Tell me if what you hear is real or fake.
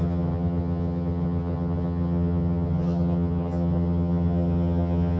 fake